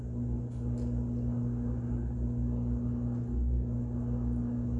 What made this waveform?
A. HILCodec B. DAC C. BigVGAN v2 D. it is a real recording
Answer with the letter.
D